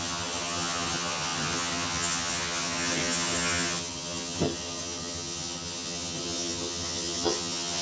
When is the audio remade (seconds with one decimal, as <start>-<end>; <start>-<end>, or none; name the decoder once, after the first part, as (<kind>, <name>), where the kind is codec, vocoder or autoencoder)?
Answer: 0.0-7.8 (vocoder, HiFi-GAN)